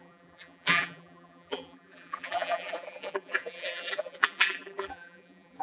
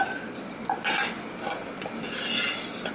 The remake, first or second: first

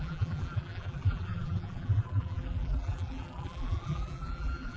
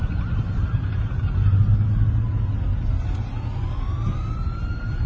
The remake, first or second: first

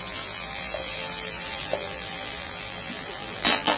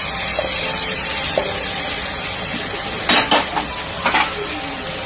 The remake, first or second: first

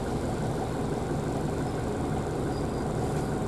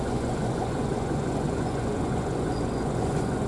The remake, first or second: second